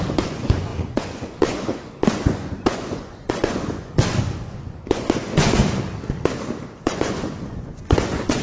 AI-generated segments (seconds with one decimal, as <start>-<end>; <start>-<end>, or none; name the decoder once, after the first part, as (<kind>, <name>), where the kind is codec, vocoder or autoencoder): 0.0-5.6 (vocoder, Vocos); 6.6-8.4